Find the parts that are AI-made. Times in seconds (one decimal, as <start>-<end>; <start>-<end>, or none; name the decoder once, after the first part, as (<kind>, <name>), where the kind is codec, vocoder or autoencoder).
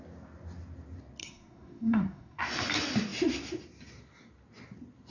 1.2-2.4 (codec, SNAC)